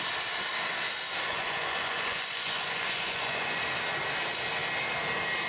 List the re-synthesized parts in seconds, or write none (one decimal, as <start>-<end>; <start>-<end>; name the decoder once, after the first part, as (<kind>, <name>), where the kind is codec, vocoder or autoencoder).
1.3-3.6 (vocoder, Vocos)